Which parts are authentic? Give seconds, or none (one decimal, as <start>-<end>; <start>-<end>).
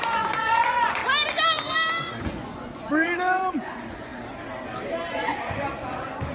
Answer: 1.0-2.0; 4.1-5.1